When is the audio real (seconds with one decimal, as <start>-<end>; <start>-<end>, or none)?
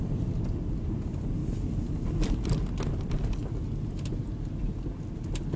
0.0-5.6